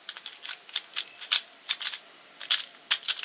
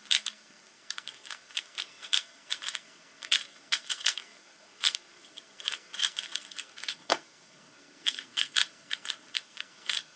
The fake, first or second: second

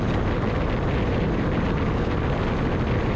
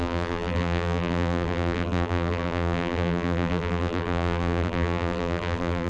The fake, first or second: second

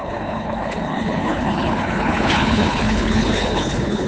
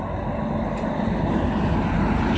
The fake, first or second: first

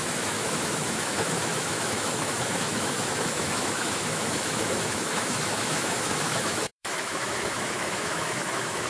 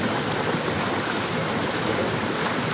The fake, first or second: first